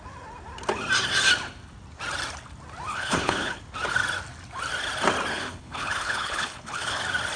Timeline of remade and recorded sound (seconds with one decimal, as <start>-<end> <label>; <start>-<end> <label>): 0.0-2.9 recorded; 2.9-3.6 remade; 3.6-5.3 recorded; 5.3-7.0 remade; 7.0-7.4 recorded